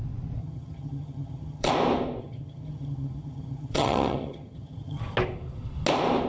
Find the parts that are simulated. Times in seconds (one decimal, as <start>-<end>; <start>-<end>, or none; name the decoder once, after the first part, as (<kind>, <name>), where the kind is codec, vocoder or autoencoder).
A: 0.4-1.7 (vocoder, HiFi-GAN); 2.2-5.0

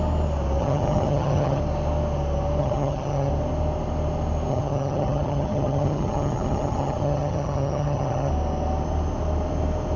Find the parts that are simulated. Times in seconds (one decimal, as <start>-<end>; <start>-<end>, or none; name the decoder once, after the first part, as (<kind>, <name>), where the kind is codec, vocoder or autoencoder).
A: 0.6-1.6 (vocoder, HiFi-GAN); 2.6-3.3; 4.5-8.3

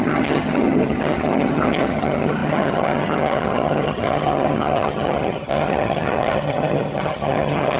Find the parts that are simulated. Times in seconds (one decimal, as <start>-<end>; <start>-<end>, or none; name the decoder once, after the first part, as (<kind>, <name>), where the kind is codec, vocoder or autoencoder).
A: 0.0-7.8 (vocoder, HiFi-GAN)

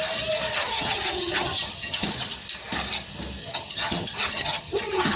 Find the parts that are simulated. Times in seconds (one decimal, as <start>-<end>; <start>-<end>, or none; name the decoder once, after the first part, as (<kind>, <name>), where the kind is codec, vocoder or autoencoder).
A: 0.5-2.1 (vocoder, HiFi-GAN); 3.4-5.2

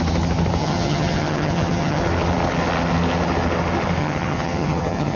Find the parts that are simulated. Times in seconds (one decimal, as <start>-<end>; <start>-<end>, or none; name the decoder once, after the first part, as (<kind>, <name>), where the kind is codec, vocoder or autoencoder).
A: 0.6-2.0 (vocoder, HiFi-GAN); 4.0-5.2